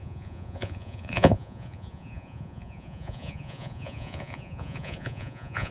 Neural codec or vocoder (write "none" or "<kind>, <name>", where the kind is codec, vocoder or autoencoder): vocoder, Vocos